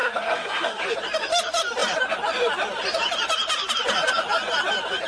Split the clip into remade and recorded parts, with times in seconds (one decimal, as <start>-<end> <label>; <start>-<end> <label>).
0.0-0.8 remade; 0.8-5.1 recorded